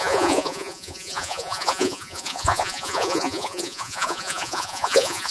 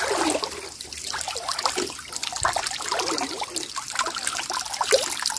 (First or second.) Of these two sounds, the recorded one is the second